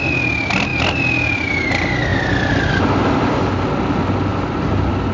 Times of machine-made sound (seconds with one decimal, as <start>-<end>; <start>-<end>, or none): 0.7-1.7; 2.1-2.7